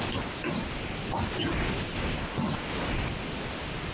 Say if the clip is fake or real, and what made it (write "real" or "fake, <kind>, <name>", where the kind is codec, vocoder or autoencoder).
real